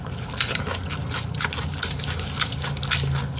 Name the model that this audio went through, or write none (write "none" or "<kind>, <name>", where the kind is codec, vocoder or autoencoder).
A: none